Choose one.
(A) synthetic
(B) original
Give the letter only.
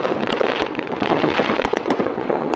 A